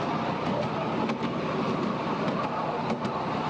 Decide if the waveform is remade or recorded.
recorded